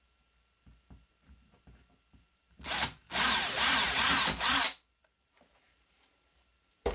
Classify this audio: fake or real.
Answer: fake